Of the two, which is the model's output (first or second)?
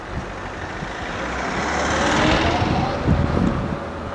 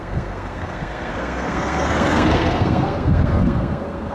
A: second